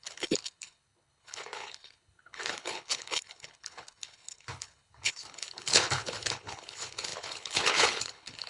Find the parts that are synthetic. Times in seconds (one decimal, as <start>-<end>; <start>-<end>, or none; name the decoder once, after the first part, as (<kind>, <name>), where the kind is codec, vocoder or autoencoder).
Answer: 0.0-8.5 (codec, HILCodec)